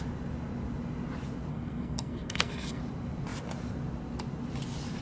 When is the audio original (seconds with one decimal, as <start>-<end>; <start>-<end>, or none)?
0.0-1.5; 2.8-5.0